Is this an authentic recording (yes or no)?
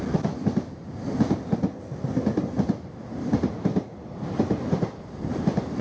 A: yes